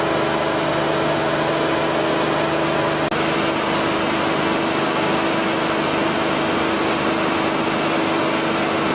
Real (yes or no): yes